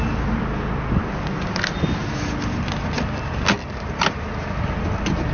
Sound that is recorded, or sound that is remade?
recorded